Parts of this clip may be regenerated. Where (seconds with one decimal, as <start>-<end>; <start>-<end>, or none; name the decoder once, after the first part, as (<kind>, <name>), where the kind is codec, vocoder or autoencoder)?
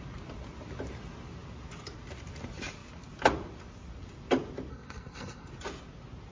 4.7-5.5 (codec, SNAC)